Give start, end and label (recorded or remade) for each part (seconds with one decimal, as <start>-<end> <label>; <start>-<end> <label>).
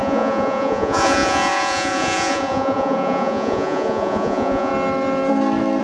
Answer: 0.0-4.7 remade; 4.7-5.8 recorded